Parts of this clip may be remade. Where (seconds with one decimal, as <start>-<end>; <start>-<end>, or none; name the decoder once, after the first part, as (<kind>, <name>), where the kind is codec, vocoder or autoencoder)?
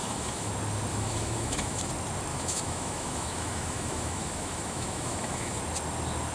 0.0-0.5 (autoencoder, DAC-VAE); 0.9-1.9; 2.3-5.6